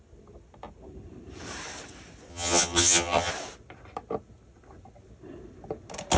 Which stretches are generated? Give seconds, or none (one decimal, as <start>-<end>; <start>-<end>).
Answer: 2.3-3.3